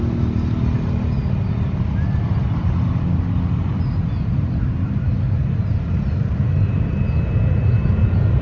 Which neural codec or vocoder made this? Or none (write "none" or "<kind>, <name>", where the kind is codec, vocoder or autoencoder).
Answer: none